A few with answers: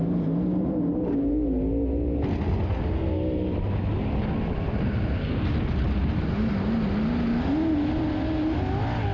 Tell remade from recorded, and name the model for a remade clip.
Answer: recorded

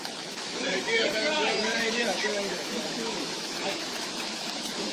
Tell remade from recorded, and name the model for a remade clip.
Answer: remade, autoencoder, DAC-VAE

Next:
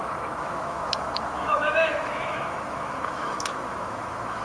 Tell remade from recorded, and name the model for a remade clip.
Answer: remade, autoencoder, DAC-VAE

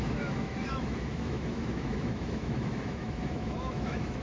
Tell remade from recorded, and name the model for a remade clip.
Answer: remade, autoencoder, DAC-VAE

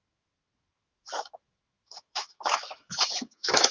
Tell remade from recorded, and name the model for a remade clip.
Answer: remade, autoencoder, DAC-VAE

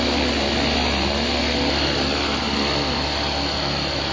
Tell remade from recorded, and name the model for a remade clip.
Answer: recorded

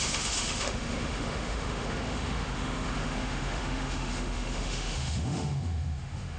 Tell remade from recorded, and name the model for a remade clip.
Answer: remade, autoencoder, DAC-VAE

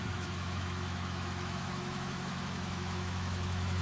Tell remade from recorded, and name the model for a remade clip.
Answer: remade, autoencoder, DAC-VAE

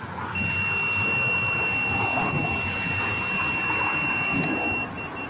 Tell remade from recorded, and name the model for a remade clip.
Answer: recorded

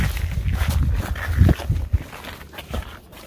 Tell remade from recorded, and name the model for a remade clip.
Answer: recorded